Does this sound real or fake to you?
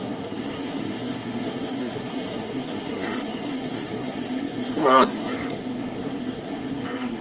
fake